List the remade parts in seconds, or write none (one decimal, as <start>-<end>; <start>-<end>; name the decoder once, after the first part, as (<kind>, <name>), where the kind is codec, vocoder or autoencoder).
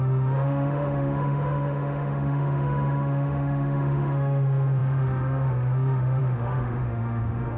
0.0-7.6 (autoencoder, DAC-VAE)